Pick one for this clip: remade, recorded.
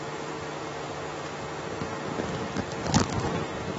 recorded